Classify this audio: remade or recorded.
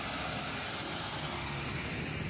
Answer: recorded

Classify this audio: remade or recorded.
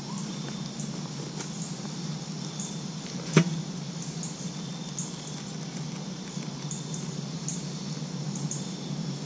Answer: recorded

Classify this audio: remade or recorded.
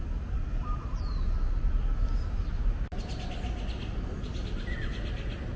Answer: recorded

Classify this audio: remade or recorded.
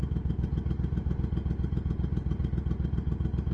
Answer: recorded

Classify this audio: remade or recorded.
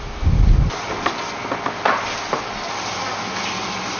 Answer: recorded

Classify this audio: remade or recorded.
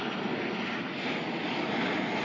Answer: recorded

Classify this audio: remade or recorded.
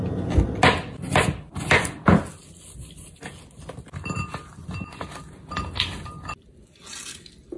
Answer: recorded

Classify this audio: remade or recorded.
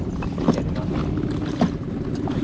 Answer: recorded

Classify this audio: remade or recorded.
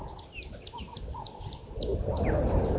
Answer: recorded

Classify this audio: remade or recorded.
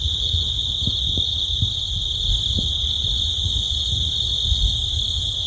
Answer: recorded